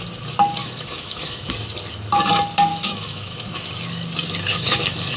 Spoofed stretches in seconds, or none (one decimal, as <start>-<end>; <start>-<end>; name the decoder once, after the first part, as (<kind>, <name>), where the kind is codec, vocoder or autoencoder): 0.6-1.5 (autoencoder, DAC-VAE); 2.7-3.7; 4.5-5.2